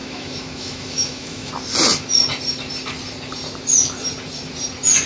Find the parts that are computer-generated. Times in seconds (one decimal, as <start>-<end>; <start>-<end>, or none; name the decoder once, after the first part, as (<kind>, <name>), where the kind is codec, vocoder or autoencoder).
0.0-1.5 (autoencoder, DAC-VAE)